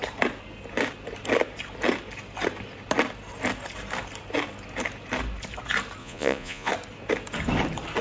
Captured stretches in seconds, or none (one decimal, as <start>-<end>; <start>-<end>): 0.0-6.0; 6.7-8.0